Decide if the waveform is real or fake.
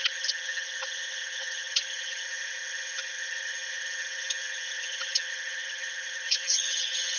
fake